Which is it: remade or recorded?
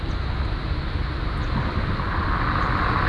recorded